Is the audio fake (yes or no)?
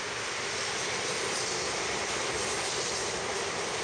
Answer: yes